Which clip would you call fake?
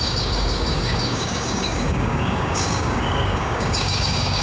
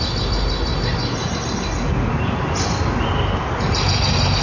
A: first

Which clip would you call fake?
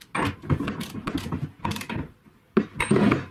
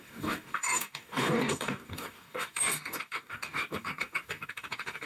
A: second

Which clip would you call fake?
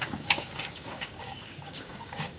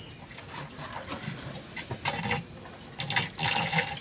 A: first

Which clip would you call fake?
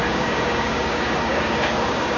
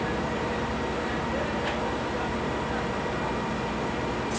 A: first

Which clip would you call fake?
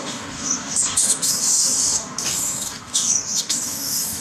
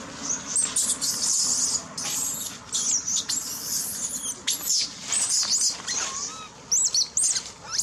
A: first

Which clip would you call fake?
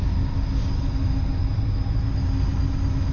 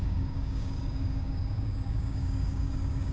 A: second